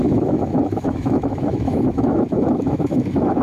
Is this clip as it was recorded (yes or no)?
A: no